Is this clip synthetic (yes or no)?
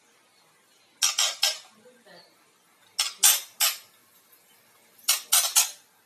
no